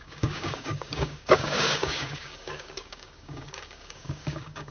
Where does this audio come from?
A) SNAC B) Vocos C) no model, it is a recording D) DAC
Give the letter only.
D